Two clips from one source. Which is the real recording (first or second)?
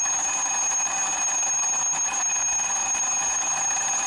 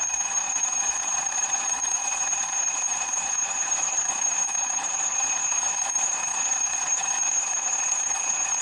first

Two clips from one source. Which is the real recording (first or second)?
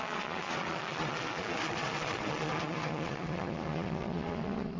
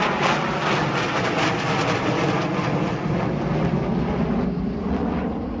second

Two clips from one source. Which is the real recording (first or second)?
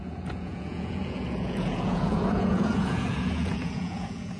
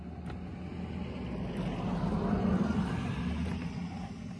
second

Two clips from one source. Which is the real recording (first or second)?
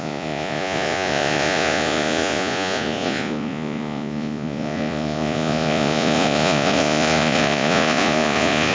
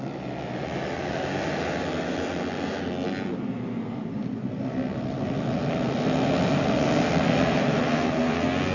second